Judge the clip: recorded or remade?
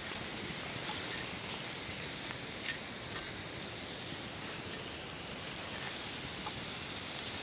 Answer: recorded